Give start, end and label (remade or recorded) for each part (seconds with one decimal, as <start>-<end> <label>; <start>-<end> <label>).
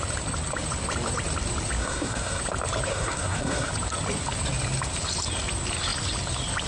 0.0-1.8 recorded; 1.8-2.4 remade; 2.4-2.9 recorded; 2.9-3.7 remade; 3.7-6.7 recorded